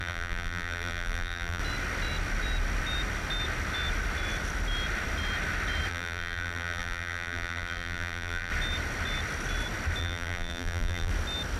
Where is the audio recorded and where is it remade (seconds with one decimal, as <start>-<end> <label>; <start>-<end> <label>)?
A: 0.0-1.6 remade; 1.6-5.9 recorded; 5.9-8.5 remade; 8.5-10.0 recorded; 10.0-11.1 remade; 11.1-11.6 recorded